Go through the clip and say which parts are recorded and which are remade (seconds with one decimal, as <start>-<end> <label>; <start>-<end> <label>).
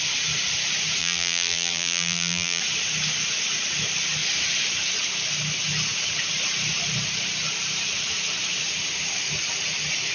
0.0-1.0 recorded; 1.0-2.6 remade; 2.6-10.1 recorded